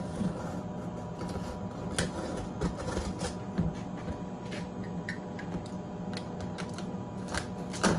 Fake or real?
real